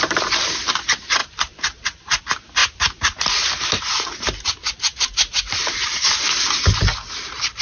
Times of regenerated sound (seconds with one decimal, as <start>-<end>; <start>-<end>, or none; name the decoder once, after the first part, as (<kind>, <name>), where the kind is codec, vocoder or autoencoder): 1.2-2.2 (vocoder, BigVGAN v2); 2.6-6.4